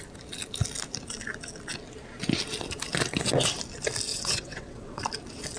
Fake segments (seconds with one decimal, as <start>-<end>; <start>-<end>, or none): 4.1-5.0

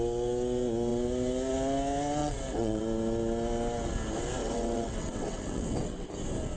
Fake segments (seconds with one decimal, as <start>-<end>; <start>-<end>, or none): 2.2-2.8; 4.4-6.1

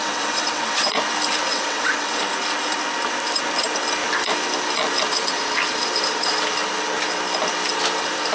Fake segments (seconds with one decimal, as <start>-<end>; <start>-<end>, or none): 0.0-1.0; 1.5-2.2

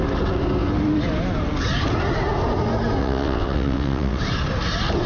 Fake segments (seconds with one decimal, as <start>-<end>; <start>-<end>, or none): 3.0-4.2

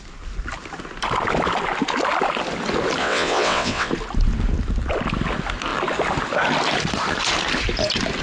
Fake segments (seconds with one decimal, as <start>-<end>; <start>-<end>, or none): 3.0-3.9

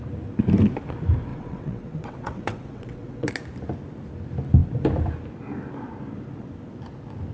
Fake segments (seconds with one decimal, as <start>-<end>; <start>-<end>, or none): 1.3-3.3

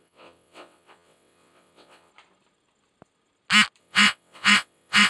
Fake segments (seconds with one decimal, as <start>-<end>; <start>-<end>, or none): 0.0-2.1; 3.8-5.1

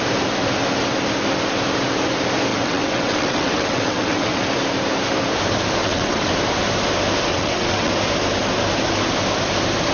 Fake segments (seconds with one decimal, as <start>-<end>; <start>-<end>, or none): 2.5-4.4; 5.8-6.3; 7.3-7.9